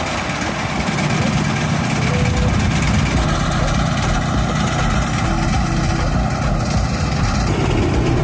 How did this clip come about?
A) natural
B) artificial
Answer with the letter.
A